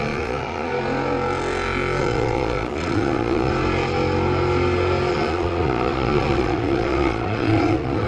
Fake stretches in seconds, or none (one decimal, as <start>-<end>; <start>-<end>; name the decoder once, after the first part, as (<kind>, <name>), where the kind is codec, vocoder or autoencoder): 0.0-0.7 (vocoder, Vocos); 2.0-3.5; 5.1-8.1